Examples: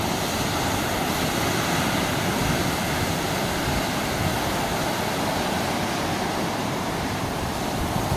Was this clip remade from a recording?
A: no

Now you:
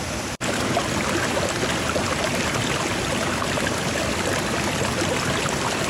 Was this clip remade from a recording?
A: yes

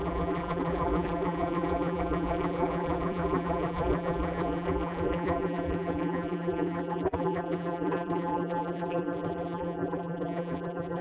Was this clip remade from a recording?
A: yes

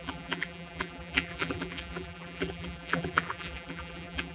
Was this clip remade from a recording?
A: yes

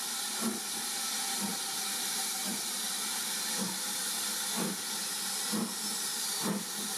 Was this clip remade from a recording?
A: no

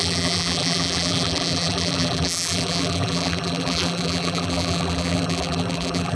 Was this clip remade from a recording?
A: yes